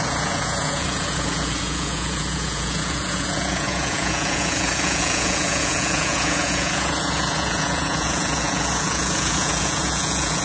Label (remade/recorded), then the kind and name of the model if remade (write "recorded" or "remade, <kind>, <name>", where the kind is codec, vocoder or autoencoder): remade, vocoder, Vocos